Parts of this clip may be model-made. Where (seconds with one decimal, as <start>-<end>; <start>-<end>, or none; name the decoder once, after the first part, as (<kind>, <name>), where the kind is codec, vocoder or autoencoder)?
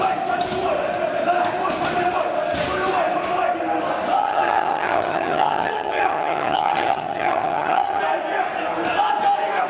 4.2-8.0 (vocoder, HiFi-GAN)